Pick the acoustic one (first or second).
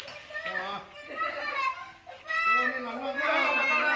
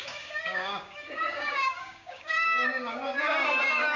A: first